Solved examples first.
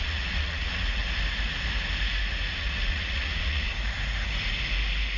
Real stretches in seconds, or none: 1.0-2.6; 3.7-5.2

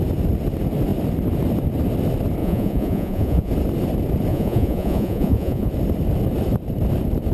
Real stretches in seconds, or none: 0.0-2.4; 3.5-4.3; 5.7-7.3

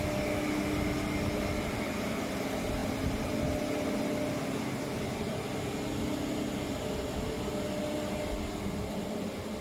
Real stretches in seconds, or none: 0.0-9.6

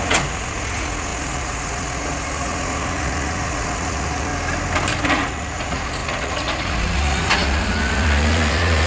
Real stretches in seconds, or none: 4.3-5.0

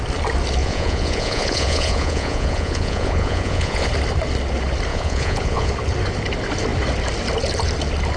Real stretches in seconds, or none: 0.0-0.6; 3.9-4.9; 5.7-8.2